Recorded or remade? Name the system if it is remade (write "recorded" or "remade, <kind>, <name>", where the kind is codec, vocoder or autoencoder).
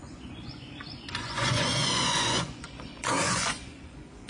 remade, vocoder, Vocos